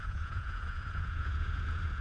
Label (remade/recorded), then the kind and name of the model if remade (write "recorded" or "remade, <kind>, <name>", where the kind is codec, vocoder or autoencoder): remade, vocoder, Vocos